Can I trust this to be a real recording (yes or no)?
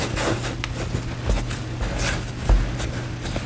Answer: yes